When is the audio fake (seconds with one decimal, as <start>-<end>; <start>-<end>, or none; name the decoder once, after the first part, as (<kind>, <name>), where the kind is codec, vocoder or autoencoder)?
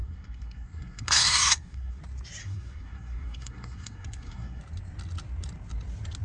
0.0-2.0 (codec, SNAC); 2.4-4.6